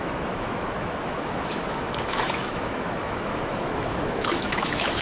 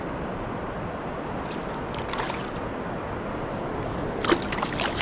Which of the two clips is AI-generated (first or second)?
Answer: first